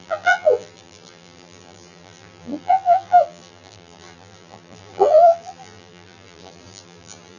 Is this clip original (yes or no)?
no